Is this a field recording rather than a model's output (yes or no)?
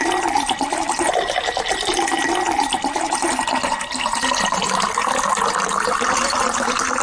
yes